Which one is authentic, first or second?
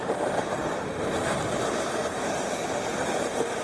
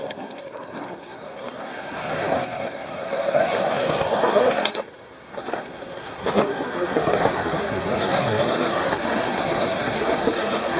first